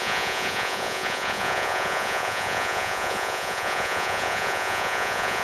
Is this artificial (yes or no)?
yes